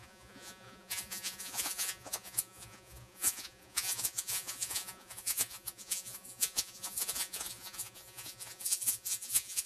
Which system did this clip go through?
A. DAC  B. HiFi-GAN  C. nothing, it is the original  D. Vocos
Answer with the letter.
D